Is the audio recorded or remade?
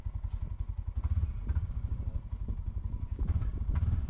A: recorded